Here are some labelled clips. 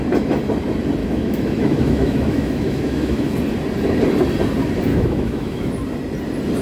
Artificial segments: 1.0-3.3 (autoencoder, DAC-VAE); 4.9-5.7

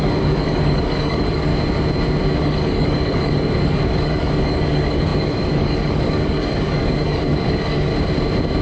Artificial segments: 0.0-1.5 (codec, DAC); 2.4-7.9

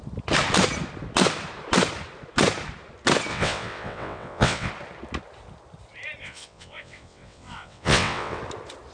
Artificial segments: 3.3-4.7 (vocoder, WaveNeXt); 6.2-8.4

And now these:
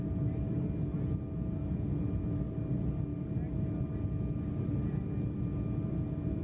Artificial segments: none

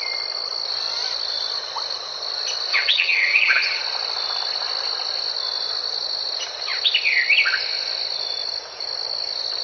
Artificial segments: 2.7-3.8 (vocoder, HiFi-GAN)

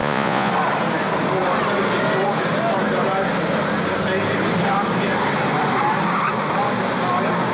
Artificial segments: 0.0-0.5 (vocoder, Vocos)

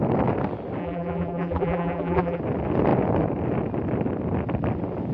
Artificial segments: 0.8-2.4 (vocoder, BigVGAN v2)